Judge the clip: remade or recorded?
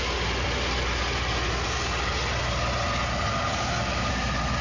recorded